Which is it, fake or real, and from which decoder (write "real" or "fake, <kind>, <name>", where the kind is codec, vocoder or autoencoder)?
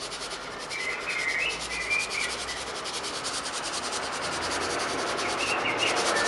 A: real